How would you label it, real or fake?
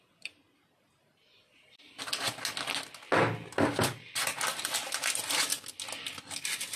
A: real